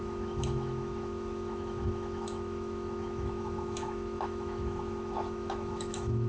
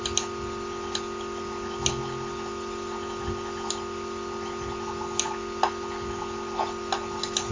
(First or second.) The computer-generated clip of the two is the first